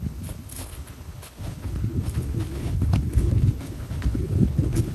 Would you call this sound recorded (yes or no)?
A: no